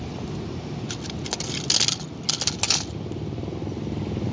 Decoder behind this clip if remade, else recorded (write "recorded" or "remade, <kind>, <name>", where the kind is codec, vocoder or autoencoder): recorded